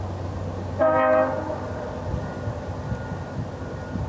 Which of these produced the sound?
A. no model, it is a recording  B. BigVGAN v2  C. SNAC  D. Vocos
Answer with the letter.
A